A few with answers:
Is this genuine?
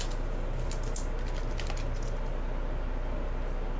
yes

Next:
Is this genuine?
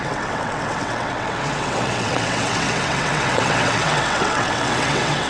no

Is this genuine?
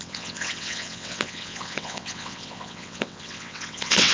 no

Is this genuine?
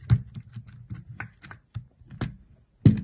yes